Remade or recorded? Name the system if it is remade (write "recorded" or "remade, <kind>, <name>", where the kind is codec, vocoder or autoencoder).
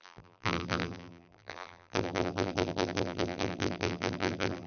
remade, vocoder, BigVGAN v2